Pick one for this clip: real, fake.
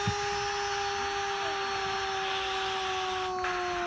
real